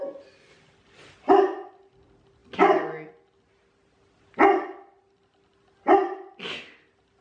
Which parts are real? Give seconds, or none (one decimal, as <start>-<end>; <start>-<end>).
0.0-7.2

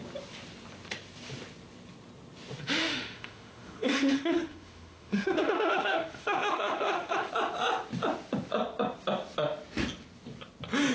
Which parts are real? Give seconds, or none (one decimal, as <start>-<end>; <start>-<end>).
0.0-2.8; 7.3-10.9

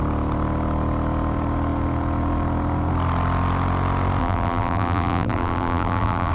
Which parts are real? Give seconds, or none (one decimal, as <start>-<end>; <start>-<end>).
0.0-4.2